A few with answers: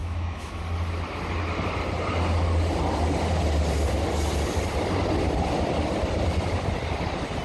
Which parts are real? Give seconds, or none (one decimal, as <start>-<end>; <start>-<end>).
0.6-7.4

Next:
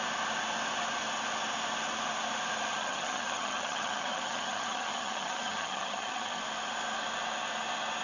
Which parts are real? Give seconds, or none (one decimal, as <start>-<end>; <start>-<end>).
0.0-2.7; 6.4-8.0

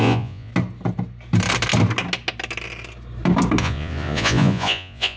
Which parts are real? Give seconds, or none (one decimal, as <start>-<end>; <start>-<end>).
0.5-3.6

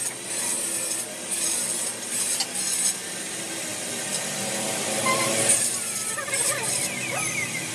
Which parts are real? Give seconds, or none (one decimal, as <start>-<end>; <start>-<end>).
0.0-7.7

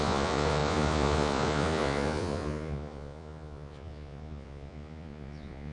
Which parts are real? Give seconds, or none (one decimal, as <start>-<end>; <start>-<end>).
none

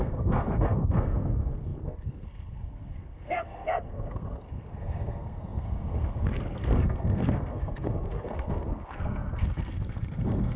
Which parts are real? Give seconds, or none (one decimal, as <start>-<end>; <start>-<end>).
none